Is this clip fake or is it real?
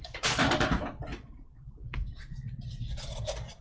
fake